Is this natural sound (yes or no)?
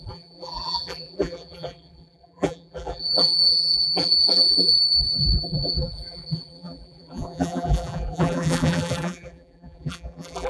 no